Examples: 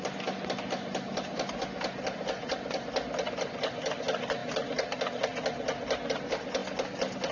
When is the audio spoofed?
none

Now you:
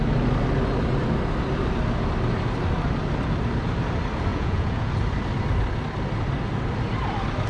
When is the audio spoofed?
4.3-4.9

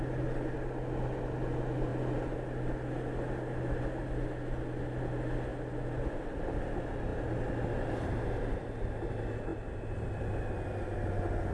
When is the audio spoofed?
none

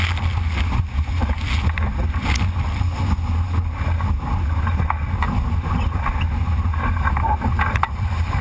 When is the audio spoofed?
none

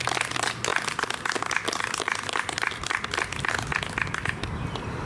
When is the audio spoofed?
none

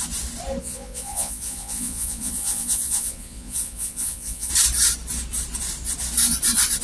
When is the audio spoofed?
0.6-4.5

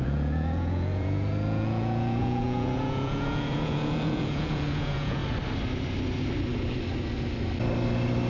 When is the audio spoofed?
0.0-5.2